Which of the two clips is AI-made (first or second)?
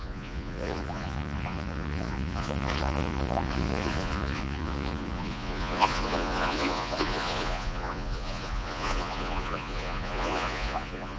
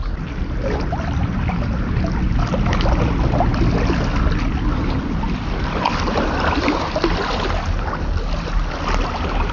first